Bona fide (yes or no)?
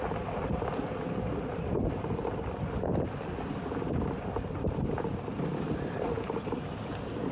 yes